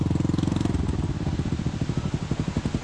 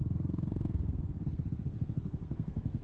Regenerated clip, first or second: second